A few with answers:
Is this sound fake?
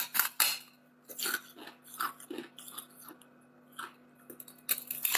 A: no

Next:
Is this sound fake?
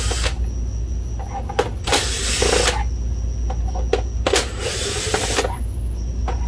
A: no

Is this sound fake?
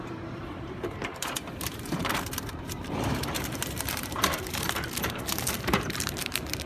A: yes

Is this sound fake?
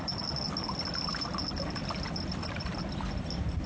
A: no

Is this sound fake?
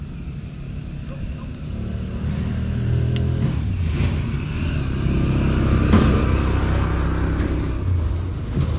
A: no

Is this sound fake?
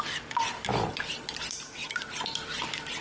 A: no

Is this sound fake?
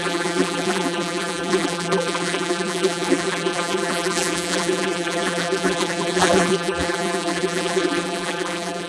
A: yes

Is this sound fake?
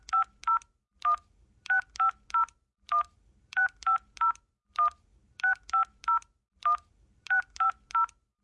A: yes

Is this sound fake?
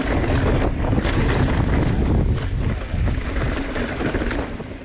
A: no